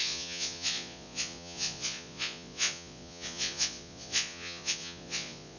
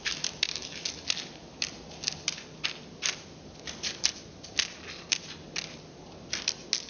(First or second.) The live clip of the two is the second